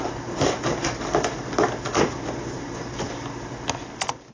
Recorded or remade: recorded